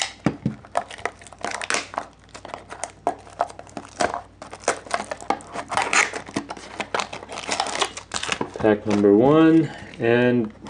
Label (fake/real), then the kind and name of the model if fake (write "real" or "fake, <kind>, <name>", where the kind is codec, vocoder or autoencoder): real